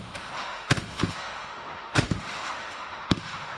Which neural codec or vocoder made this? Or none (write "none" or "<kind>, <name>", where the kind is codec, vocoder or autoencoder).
autoencoder, DAC-VAE